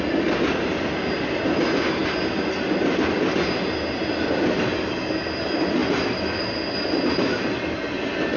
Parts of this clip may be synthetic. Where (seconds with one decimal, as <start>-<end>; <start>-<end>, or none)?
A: none